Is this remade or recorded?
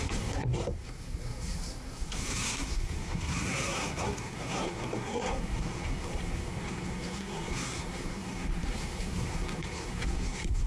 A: remade